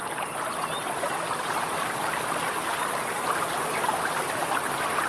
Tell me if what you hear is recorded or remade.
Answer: recorded